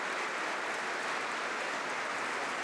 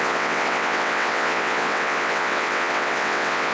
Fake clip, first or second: second